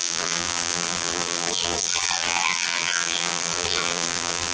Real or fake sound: fake